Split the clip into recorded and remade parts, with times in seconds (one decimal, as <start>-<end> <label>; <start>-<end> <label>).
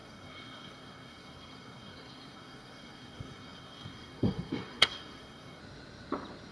0.0-5.6 remade; 5.6-6.5 recorded